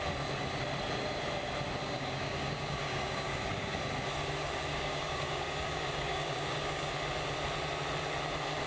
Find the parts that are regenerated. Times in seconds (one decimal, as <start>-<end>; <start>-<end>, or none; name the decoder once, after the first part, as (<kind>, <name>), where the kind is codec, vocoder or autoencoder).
1.8-3.8 (codec, DAC); 4.7-6.9